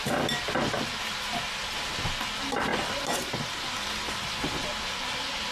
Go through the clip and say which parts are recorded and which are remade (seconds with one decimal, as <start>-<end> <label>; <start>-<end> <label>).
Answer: 0.0-5.5 recorded